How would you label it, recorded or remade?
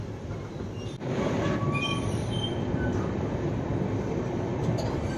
remade